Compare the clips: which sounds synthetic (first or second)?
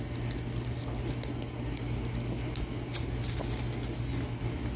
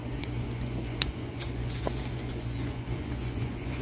second